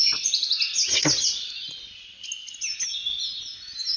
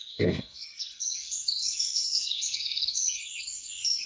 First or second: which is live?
first